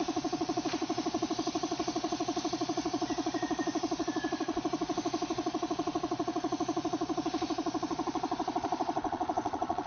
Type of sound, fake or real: fake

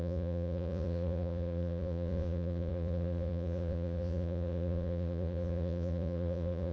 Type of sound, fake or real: fake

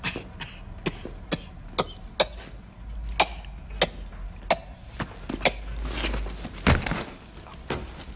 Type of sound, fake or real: real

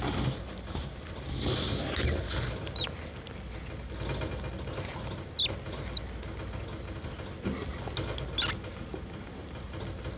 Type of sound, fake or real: real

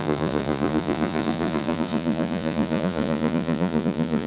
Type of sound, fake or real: fake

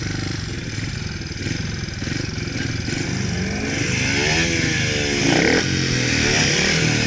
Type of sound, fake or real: real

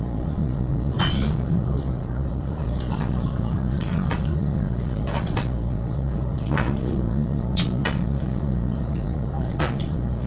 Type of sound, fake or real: fake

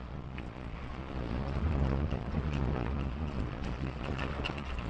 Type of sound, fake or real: fake